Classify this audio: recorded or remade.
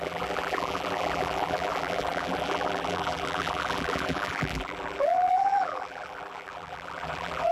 remade